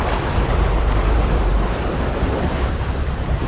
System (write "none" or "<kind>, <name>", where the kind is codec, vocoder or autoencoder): vocoder, BigVGAN v2